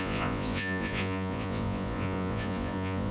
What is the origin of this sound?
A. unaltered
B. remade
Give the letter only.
B